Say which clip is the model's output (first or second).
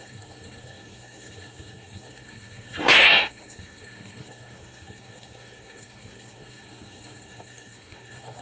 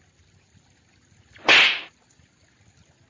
first